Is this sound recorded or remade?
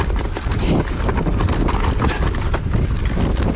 recorded